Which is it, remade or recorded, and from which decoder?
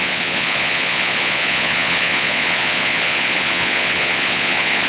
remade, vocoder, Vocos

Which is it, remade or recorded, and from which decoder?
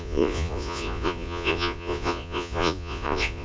remade, vocoder, Vocos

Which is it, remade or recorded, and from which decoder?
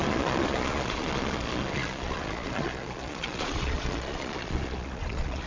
remade, vocoder, Vocos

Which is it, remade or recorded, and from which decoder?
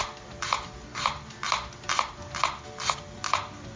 recorded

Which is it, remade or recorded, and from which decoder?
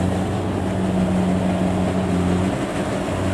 recorded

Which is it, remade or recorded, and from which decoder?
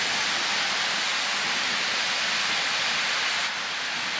recorded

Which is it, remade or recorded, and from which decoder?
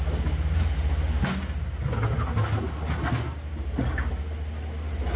recorded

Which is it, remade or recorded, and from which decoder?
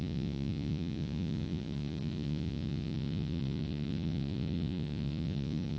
remade, vocoder, Vocos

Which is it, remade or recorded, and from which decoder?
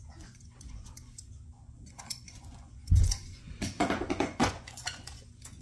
remade, vocoder, Vocos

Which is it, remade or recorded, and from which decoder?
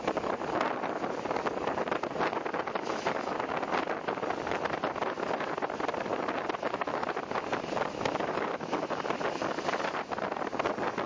recorded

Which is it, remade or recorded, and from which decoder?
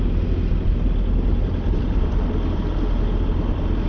recorded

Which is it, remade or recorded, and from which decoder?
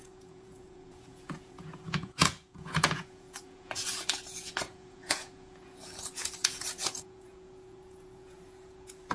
remade, vocoder, Vocos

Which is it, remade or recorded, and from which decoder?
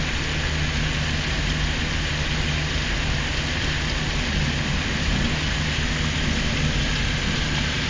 recorded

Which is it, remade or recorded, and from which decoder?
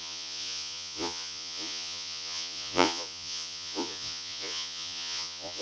remade, vocoder, Vocos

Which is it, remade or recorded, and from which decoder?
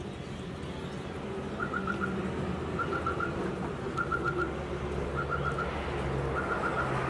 recorded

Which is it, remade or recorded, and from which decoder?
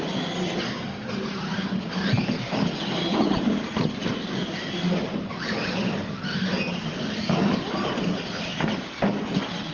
recorded